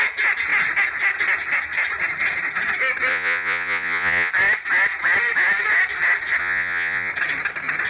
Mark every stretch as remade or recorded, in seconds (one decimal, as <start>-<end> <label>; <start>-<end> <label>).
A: 0.0-3.1 recorded; 3.1-4.3 remade; 4.3-6.4 recorded; 6.4-7.1 remade; 7.1-7.9 recorded